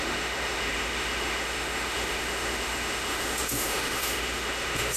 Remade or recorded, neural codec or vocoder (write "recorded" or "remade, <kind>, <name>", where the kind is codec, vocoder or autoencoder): remade, autoencoder, DAC-VAE